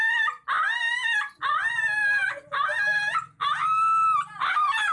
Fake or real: real